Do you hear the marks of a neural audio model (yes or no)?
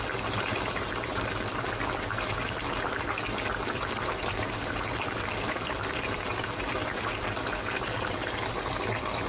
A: no